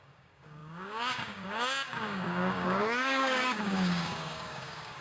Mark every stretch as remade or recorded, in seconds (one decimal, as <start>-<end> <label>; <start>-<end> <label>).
0.0-5.0 remade